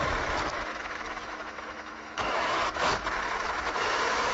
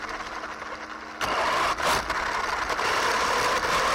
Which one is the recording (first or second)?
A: second